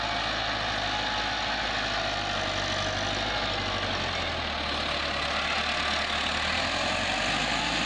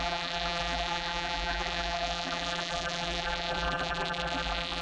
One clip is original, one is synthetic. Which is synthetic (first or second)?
second